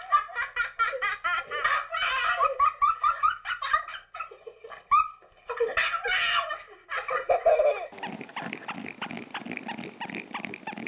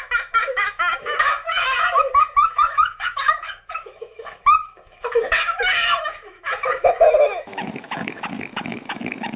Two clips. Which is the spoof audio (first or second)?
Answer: second